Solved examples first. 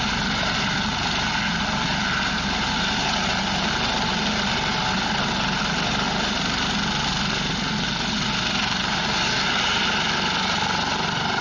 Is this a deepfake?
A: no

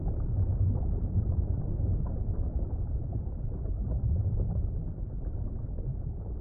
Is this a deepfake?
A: yes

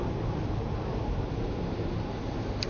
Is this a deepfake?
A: yes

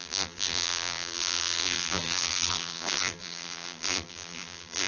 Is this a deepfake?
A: yes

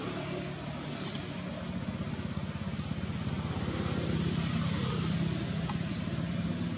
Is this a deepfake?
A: no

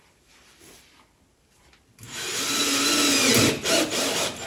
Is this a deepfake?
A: no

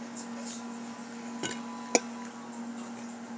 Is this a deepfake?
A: no